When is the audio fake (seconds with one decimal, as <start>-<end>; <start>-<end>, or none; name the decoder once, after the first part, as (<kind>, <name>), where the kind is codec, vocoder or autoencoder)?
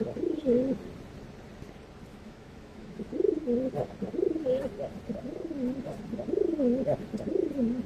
2.1-3.1 (autoencoder, DAC-VAE)